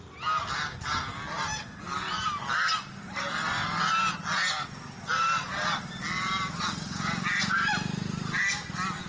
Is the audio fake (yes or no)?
no